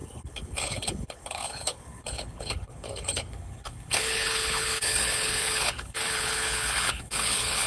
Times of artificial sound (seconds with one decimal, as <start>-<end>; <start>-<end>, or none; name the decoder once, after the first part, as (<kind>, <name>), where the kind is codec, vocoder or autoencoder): 0.0-7.7 (codec, HILCodec)